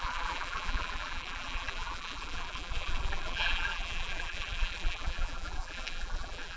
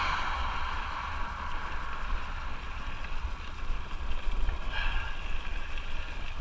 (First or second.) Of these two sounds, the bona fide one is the second